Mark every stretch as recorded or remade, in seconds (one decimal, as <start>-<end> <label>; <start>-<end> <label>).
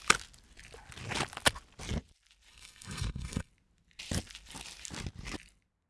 0.0-2.5 recorded; 2.5-3.5 remade; 3.5-5.9 recorded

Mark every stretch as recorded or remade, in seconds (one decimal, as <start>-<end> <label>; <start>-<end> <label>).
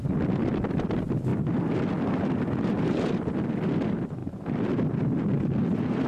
0.0-6.1 recorded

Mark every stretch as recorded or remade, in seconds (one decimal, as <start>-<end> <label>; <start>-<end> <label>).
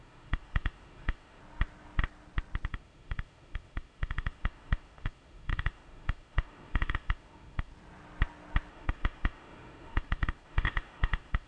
0.0-1.4 remade; 1.4-2.7 recorded; 2.7-7.7 remade; 7.7-8.7 recorded; 8.7-11.5 remade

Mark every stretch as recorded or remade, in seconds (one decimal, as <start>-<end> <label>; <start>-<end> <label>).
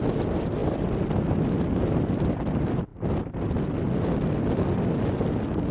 0.0-5.7 recorded